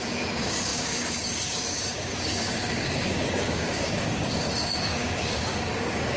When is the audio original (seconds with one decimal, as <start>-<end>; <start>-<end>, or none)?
none